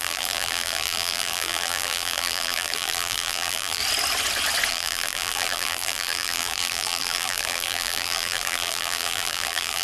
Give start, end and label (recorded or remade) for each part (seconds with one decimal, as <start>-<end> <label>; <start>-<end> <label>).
0.0-3.8 remade; 3.8-4.7 recorded; 4.7-9.8 remade